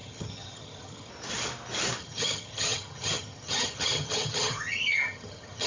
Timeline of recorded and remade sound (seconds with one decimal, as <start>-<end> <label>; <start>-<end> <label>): 0.0-1.1 remade; 1.1-2.0 recorded; 2.0-5.7 remade